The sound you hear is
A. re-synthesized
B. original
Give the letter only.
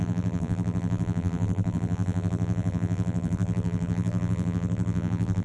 A